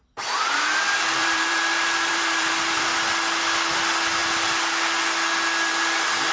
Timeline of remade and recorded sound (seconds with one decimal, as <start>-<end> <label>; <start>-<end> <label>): 0.0-1.2 recorded; 1.2-2.8 remade; 2.8-6.3 recorded